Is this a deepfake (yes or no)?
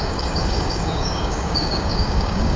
yes